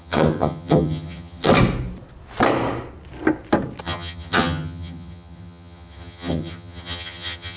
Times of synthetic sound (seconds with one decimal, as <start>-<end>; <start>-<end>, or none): 0.0-1.5; 3.8-7.6